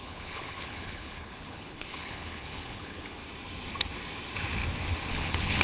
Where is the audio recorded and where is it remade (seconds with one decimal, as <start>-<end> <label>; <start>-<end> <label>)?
0.0-3.2 remade; 3.2-5.1 recorded; 5.1-5.6 remade